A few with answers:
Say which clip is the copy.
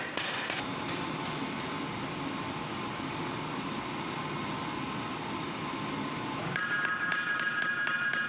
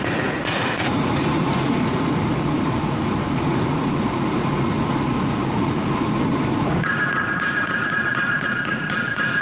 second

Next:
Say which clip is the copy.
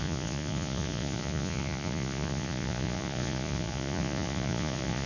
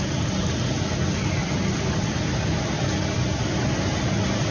first